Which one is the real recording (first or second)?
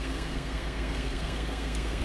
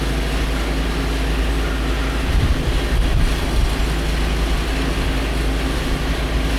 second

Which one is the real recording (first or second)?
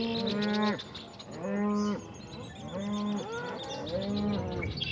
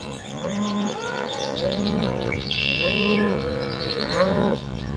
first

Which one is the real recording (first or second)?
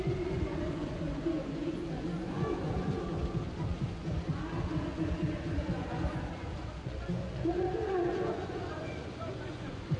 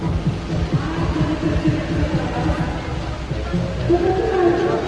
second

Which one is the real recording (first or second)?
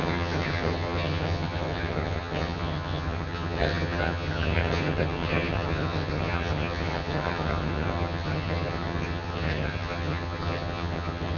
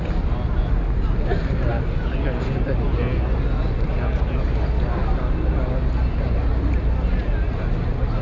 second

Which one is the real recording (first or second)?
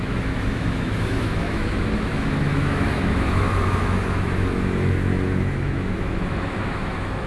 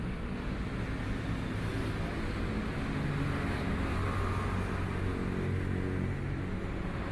second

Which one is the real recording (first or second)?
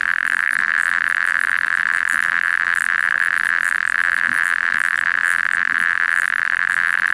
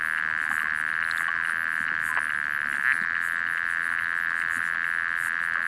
second